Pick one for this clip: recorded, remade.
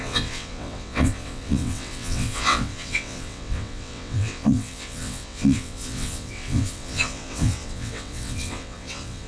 remade